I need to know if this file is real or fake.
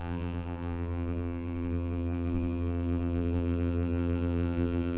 fake